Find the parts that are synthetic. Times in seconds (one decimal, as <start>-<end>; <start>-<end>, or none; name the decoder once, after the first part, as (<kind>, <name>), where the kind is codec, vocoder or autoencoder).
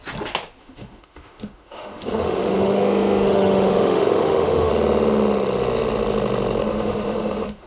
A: 0.6-4.7 (autoencoder, DAC-VAE); 6.6-7.7